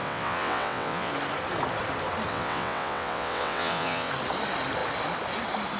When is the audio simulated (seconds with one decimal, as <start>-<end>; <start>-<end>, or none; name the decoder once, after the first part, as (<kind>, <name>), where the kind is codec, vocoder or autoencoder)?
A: 0.0-1.1 (vocoder, WaveNeXt); 2.3-4.1